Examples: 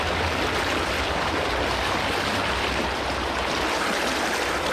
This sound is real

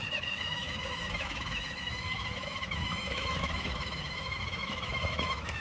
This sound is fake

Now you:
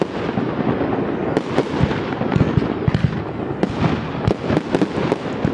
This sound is real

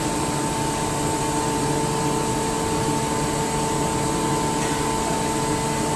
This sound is real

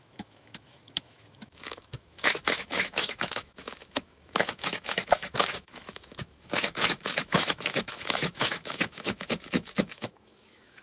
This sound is fake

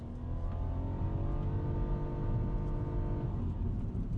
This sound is real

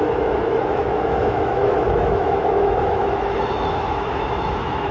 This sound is fake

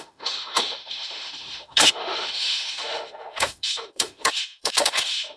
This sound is fake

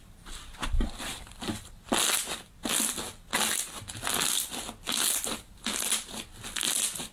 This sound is real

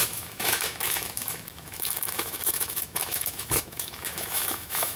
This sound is fake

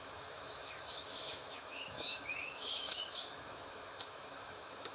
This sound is fake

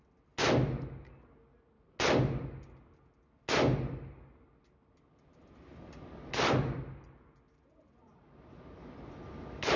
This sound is real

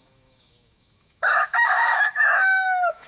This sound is fake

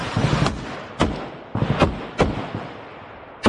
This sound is real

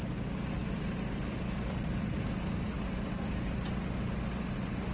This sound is real